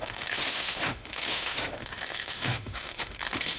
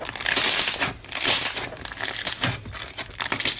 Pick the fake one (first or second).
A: first